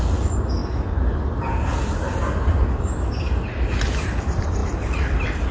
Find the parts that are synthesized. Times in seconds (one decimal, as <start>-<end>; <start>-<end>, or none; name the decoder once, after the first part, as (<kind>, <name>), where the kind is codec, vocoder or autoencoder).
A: none